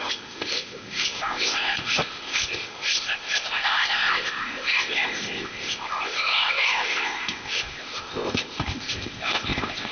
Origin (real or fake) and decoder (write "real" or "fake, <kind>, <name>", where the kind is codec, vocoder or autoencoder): fake, codec, ZipCodec